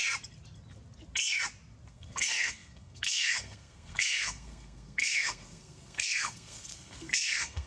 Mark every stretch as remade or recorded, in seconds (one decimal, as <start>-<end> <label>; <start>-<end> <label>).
0.0-1.9 recorded; 1.9-7.7 remade